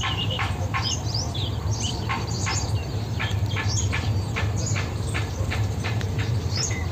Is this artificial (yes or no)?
yes